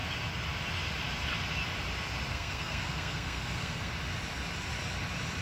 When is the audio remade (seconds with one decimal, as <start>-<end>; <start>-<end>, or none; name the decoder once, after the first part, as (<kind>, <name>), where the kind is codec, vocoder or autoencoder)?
2.3-3.9 (codec, SNAC)